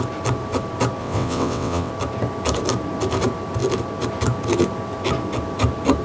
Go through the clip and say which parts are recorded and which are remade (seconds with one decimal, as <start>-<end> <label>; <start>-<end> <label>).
0.0-1.0 recorded; 1.0-1.9 remade; 1.9-6.0 recorded